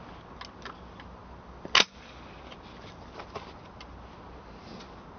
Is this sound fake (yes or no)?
no